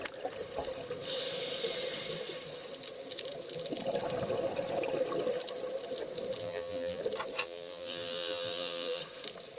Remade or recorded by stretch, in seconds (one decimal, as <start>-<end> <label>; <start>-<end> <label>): 0.0-6.4 recorded; 6.4-7.0 remade; 7.0-7.4 recorded; 7.4-9.0 remade; 9.0-9.6 recorded